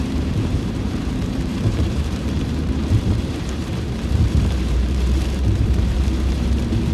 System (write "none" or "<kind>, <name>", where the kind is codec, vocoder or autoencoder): vocoder, BigVGAN v2